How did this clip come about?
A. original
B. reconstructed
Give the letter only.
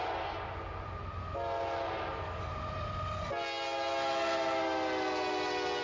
A